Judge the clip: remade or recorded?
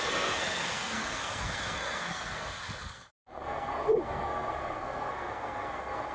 remade